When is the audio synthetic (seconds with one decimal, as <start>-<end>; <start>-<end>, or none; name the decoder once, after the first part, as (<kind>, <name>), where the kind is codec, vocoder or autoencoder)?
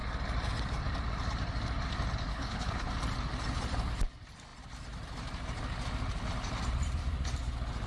2.3-2.9 (codec, HILCodec)